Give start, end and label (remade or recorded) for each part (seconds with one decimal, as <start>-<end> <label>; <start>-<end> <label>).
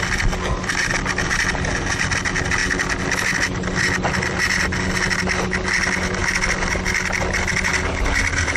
0.0-8.6 recorded